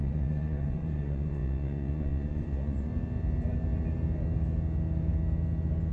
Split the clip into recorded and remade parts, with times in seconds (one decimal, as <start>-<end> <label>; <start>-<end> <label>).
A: 0.0-2.9 remade; 2.9-5.9 recorded